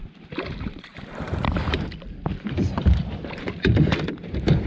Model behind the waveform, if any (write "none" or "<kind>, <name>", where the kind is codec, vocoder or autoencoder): vocoder, BigVGAN v2